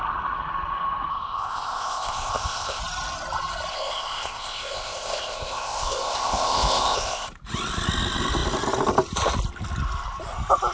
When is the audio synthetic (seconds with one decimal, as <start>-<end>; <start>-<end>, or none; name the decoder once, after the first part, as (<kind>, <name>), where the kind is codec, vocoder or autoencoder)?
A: 1.1-2.8 (codec, ZipCodec); 3.7-7.3

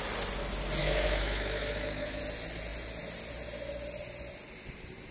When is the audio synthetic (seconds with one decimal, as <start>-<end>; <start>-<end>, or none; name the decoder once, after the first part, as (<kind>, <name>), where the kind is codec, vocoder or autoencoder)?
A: 0.8-2.2 (autoencoder, DAC-VAE)

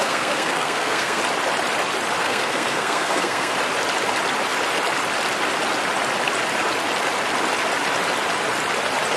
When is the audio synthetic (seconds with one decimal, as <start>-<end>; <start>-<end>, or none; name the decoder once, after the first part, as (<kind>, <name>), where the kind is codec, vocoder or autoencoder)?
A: 0.0-1.2 (codec, SNAC); 2.2-3.5

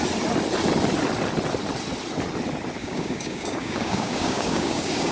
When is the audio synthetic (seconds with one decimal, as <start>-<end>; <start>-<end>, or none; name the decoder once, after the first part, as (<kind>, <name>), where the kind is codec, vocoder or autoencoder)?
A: 2.8-5.1 (codec, DAC)

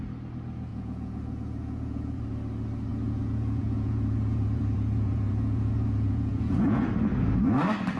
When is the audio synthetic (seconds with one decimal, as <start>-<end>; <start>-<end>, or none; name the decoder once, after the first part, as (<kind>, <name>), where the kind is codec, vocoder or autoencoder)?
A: 0.7-2.2 (vocoder, Vocos); 2.9-6.9

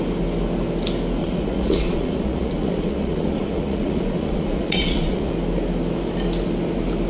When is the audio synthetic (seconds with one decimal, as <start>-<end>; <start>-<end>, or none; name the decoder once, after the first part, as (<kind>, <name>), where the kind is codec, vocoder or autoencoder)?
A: 1.2-5.3 (vocoder, Vocos)

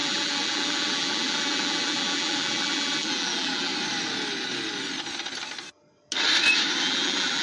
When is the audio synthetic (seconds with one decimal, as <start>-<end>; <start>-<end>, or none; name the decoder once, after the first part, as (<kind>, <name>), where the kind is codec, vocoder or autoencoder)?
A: 0.0-3.7 (vocoder, BigVGAN v2); 6.8-7.4